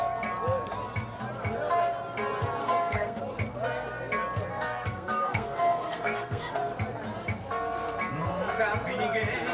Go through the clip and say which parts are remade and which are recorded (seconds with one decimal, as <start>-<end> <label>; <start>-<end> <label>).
0.0-2.6 recorded; 2.6-3.2 remade; 3.2-4.5 recorded; 4.5-6.5 remade; 6.5-9.5 recorded